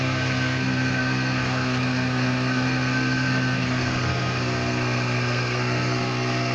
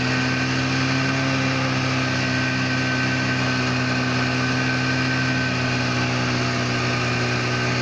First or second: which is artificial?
first